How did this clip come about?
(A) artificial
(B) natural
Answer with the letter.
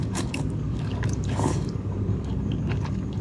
A